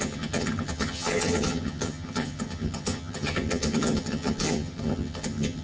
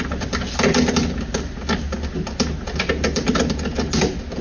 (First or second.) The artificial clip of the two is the first